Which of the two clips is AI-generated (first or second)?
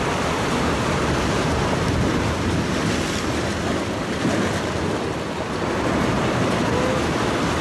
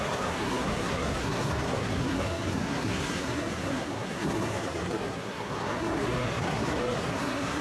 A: second